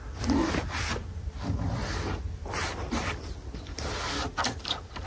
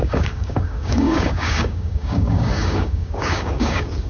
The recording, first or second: first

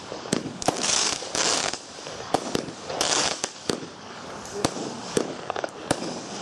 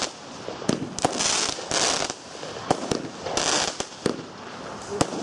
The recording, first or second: second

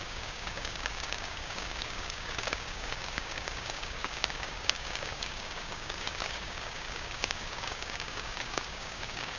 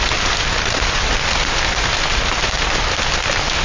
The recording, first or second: second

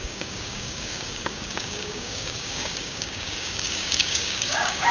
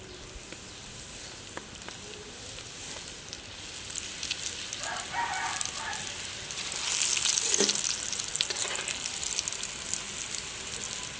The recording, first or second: second